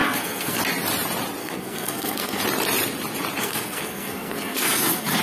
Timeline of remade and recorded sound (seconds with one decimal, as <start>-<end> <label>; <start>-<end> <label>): 0.0-0.6 remade; 0.6-1.4 recorded; 1.4-2.4 remade; 2.4-3.4 recorded; 3.4-5.2 remade